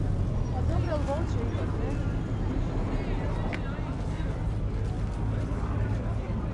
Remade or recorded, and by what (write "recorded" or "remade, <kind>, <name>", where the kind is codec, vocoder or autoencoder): recorded